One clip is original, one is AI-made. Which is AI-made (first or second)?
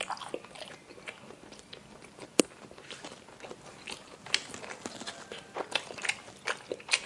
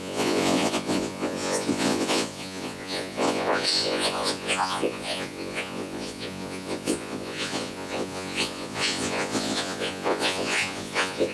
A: second